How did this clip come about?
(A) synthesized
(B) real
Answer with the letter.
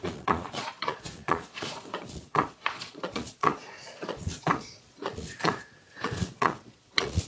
A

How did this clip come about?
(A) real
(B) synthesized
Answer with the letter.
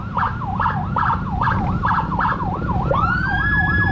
A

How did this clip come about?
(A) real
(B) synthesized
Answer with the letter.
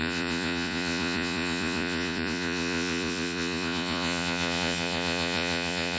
B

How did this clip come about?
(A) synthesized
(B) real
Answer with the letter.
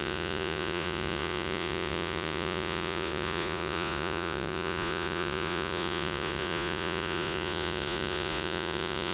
A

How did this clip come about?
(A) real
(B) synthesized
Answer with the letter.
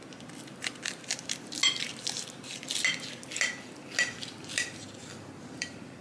A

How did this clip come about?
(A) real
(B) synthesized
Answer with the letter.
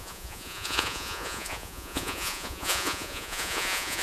B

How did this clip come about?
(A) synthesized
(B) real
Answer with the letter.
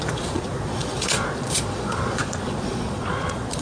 A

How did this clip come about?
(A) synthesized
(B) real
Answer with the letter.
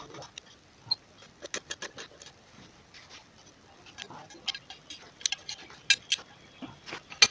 B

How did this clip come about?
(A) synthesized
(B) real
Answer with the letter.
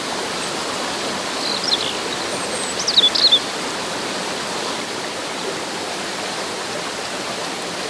B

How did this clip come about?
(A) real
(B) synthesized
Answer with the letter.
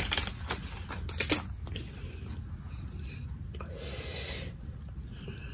A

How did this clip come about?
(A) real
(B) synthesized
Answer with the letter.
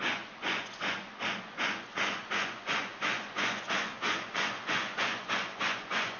B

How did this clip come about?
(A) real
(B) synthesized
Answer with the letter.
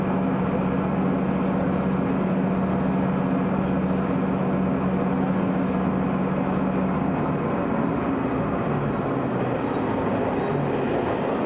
A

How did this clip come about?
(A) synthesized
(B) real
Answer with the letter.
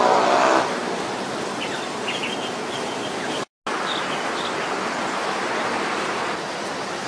B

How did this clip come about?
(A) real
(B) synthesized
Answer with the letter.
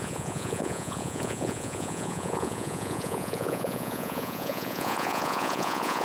B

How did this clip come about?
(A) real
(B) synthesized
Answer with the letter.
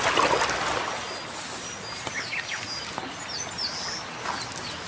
A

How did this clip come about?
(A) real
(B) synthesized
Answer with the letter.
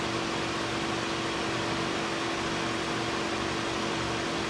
A